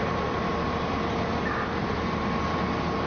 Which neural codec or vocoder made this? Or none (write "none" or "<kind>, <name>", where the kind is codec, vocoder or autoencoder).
vocoder, BigVGAN v2